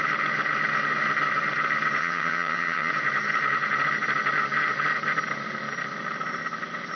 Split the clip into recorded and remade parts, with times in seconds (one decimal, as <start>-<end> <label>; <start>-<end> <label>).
0.0-2.0 recorded; 2.0-2.9 remade; 2.9-7.0 recorded

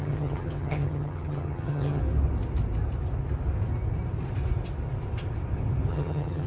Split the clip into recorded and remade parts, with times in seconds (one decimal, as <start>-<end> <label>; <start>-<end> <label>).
0.0-2.0 remade; 2.0-5.9 recorded; 5.9-6.5 remade

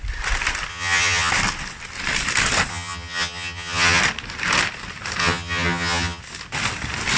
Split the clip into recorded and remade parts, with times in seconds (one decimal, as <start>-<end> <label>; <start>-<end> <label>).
0.0-0.7 recorded; 0.7-1.3 remade; 1.3-2.7 recorded; 2.7-4.0 remade; 4.0-5.2 recorded; 5.2-6.2 remade; 6.2-7.2 recorded

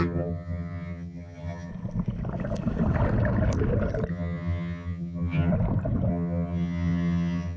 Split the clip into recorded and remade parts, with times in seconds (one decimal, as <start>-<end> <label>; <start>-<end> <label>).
0.0-1.7 remade; 1.7-4.1 recorded; 4.1-5.5 remade; 5.5-6.1 recorded; 6.1-7.6 remade